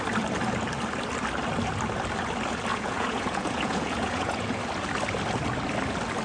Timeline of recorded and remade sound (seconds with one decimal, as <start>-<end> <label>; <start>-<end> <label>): 0.0-2.7 recorded; 2.7-4.6 remade; 4.6-6.2 recorded